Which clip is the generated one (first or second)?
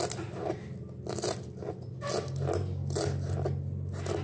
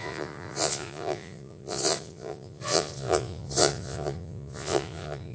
second